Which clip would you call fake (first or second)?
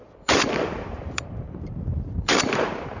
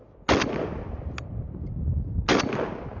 first